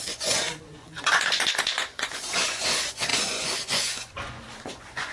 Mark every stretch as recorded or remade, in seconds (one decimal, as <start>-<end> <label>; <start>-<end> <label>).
0.0-5.1 remade